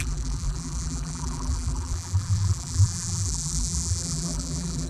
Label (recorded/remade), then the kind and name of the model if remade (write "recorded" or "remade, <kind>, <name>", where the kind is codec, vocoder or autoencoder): remade, vocoder, BigVGAN v2